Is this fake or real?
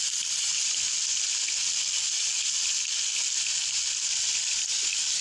real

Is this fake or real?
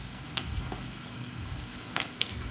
fake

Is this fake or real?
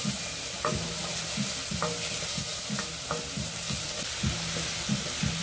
real